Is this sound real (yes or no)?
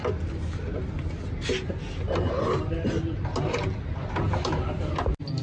yes